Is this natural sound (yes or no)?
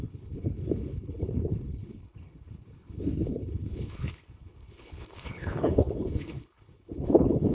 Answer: no